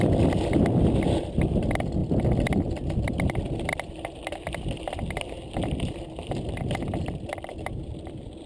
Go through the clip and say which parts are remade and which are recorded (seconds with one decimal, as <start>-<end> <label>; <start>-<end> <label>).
0.0-8.5 remade